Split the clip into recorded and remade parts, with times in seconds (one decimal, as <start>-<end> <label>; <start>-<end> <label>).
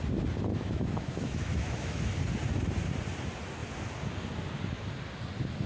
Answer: 0.0-0.5 recorded; 0.5-2.0 remade; 2.0-5.7 recorded